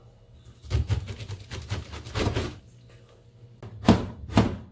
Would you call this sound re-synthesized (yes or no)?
no